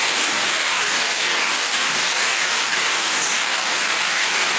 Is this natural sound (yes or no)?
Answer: no